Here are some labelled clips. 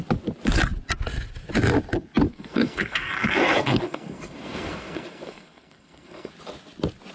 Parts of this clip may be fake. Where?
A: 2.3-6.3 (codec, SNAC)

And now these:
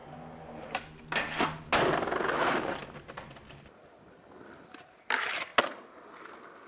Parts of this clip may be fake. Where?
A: 2.4-5.5 (vocoder, BigVGAN v2)

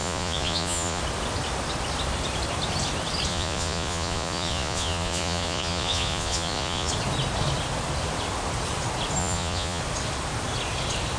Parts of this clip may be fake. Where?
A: 0.0-1.0 (vocoder, Vocos); 3.3-6.9; 9.2-9.8

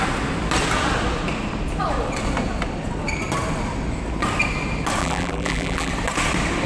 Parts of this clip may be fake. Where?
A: 5.0-5.9 (vocoder, BigVGAN v2)

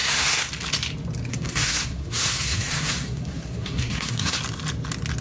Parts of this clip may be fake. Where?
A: 0.0-0.5 (codec, SNAC); 1.3-4.4

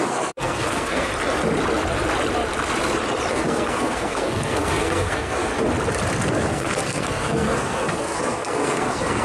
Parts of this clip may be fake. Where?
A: 0.0-1.1 (codec, SNAC); 3.3-5.5; 6.2-9.2